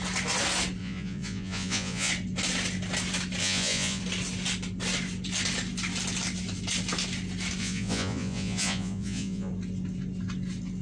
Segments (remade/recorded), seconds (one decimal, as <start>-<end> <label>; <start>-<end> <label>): 0.0-0.8 recorded; 0.8-2.1 remade; 2.1-3.4 recorded; 3.4-4.0 remade; 4.0-7.6 recorded; 7.6-9.5 remade; 9.5-10.8 recorded

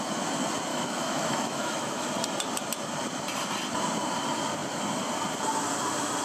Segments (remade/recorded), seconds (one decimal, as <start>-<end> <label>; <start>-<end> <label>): 0.0-0.7 recorded; 0.7-2.1 remade; 2.1-6.2 recorded

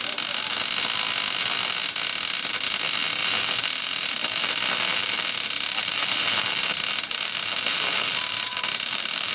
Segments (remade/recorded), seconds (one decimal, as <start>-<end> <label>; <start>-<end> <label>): 0.0-3.2 recorded; 3.2-4.5 remade; 4.5-4.9 recorded; 4.9-9.3 remade